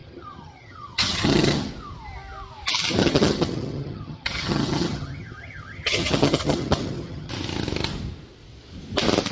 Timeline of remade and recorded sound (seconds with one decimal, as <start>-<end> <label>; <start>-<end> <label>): 0.0-1.7 remade; 1.7-3.0 recorded; 3.0-7.3 remade; 7.3-9.3 recorded